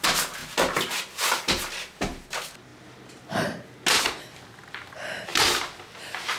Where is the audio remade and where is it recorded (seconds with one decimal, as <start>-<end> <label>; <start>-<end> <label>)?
0.0-6.4 recorded